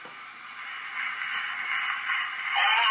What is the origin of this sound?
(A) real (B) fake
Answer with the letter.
B